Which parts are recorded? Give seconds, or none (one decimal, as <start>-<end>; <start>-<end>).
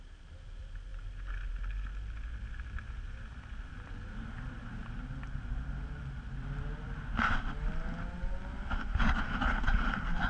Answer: 0.0-10.3